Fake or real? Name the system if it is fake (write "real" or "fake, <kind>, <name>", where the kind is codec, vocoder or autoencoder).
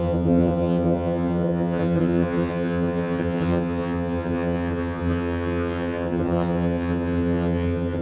fake, vocoder, HiFi-GAN